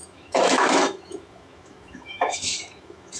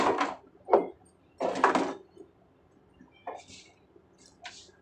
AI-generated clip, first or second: first